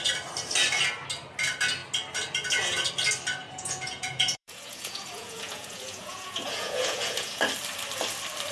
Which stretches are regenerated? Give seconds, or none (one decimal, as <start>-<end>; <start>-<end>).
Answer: 3.4-7.4